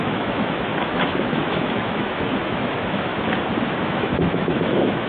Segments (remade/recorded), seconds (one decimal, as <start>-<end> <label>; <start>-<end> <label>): 0.0-3.1 remade; 3.1-3.8 recorded; 3.8-5.1 remade

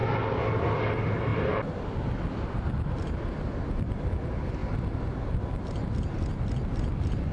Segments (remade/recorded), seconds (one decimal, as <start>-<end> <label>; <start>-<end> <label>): 0.0-7.3 recorded